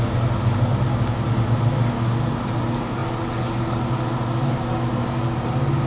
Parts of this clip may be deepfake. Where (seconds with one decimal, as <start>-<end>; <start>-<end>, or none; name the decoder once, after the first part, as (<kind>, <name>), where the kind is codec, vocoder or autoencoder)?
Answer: none